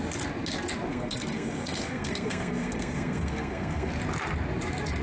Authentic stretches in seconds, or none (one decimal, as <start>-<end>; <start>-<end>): 0.0-0.9; 3.9-5.0